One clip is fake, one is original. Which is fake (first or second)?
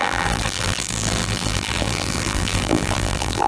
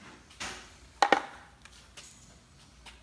first